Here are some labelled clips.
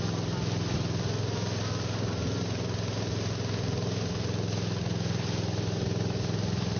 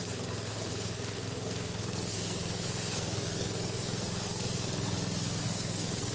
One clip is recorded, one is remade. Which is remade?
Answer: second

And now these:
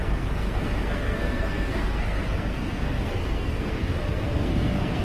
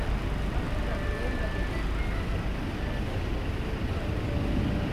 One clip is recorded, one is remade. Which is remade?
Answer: first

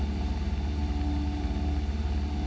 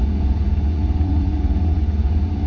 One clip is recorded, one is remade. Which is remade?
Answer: second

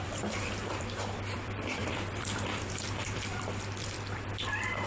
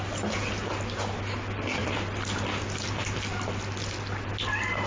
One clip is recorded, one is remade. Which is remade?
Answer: first